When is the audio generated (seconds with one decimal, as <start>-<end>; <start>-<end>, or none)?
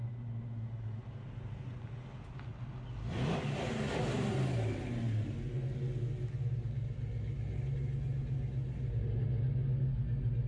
none